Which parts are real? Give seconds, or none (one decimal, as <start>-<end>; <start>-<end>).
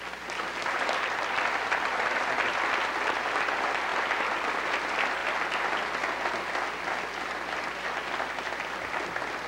0.0-9.5